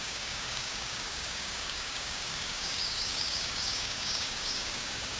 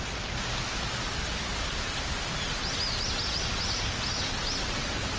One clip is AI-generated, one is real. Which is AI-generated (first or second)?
first